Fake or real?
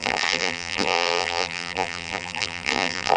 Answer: fake